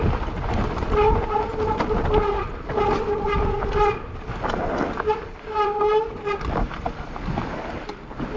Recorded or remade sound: recorded